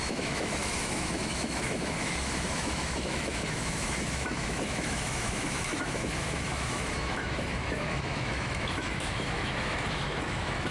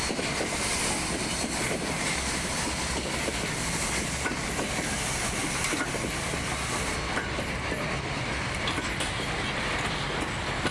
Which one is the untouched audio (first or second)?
second